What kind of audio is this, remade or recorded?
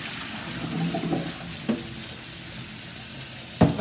recorded